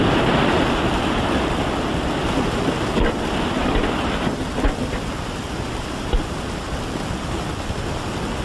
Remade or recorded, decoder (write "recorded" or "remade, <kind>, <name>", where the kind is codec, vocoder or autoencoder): recorded